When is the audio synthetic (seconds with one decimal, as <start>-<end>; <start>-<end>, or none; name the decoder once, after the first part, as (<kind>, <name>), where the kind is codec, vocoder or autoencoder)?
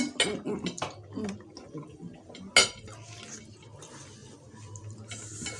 none